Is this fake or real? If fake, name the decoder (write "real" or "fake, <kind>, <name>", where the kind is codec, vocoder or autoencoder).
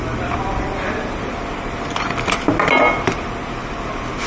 real